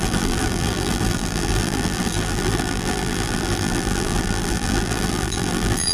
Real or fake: fake